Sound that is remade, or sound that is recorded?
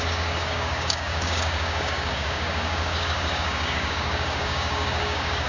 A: remade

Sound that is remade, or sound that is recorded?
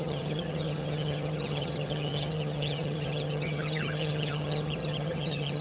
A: remade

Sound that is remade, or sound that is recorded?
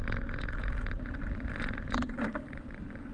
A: recorded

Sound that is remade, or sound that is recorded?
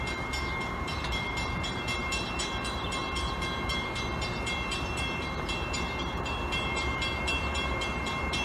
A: remade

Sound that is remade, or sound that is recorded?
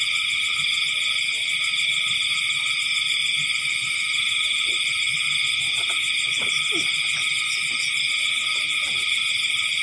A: recorded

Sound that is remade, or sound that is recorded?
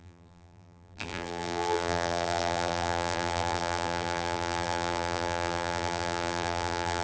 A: remade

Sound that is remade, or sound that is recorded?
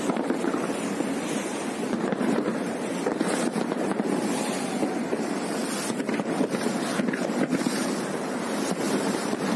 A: remade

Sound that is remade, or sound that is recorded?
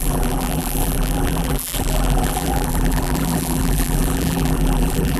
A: remade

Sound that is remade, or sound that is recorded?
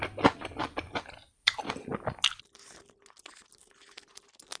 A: recorded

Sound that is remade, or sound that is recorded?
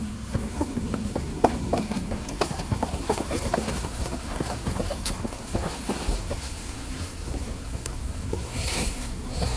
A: remade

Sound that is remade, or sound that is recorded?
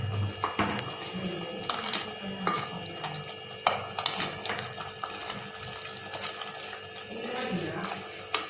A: recorded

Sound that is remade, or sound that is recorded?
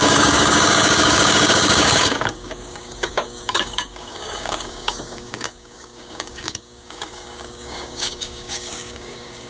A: remade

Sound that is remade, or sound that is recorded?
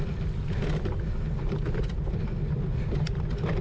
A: recorded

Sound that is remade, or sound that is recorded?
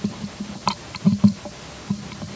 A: recorded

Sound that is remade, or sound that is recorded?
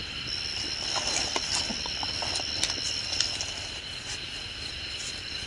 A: recorded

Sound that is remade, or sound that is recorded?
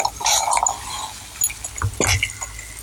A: recorded